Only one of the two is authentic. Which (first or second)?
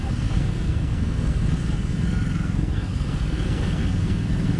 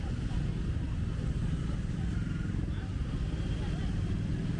second